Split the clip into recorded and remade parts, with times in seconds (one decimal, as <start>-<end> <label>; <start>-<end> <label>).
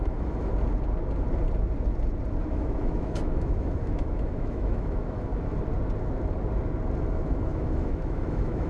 0.0-0.5 remade; 0.5-2.5 recorded; 2.5-5.3 remade; 5.3-7.1 recorded; 7.1-8.7 remade